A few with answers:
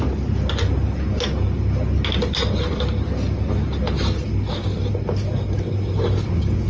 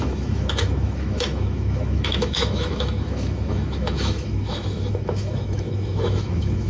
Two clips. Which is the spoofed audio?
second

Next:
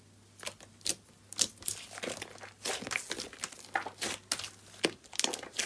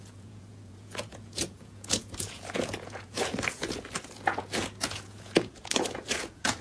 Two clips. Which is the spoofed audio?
second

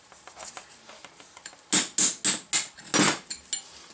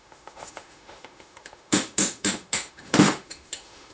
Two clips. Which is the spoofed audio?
second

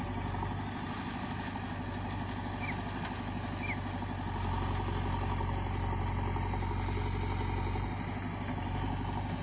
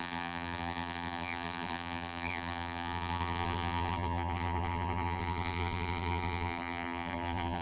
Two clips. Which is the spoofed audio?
second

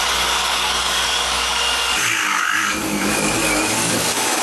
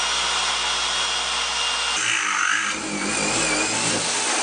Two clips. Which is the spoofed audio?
first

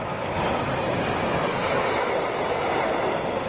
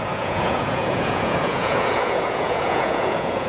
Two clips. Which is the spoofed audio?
second